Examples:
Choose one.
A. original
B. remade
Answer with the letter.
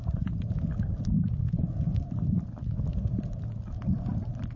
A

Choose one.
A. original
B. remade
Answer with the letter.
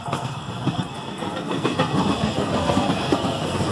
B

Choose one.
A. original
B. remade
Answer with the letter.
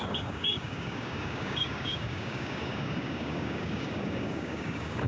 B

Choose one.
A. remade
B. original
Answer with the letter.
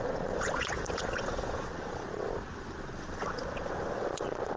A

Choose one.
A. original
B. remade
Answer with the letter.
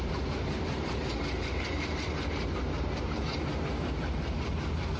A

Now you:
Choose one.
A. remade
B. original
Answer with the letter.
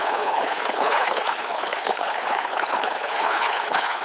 A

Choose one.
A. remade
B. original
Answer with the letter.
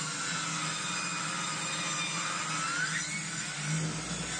B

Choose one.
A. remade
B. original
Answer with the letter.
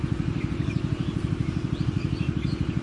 B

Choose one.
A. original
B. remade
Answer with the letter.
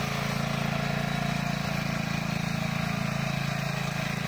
A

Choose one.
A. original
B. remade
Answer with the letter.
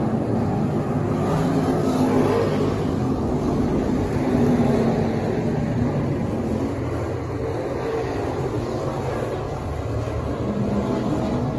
A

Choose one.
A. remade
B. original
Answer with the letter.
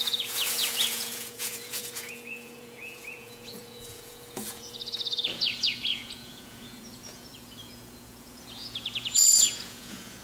A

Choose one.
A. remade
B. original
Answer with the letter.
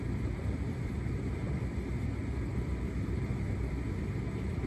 A